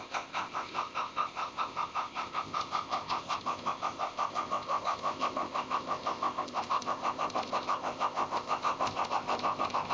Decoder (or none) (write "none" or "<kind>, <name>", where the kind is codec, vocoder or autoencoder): codec, ZipCodec